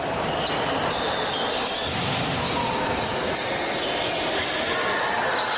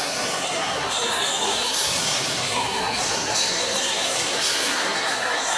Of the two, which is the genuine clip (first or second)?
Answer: first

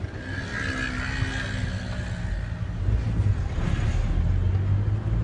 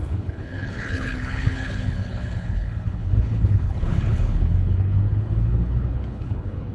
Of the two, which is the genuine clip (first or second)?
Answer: first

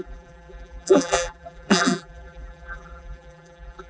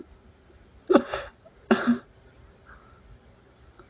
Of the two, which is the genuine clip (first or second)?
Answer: second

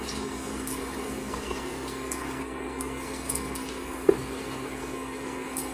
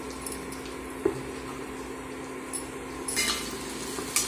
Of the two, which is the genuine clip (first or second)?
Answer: second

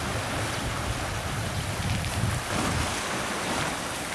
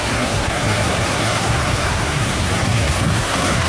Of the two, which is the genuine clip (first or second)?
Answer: first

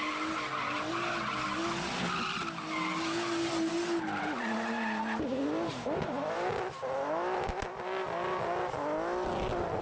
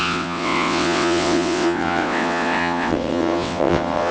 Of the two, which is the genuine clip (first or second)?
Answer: first